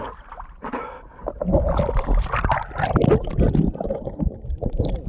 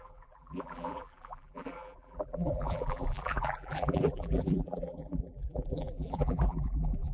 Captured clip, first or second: first